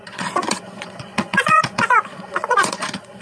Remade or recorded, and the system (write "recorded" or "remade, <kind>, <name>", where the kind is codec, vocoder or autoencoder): remade, vocoder, Vocos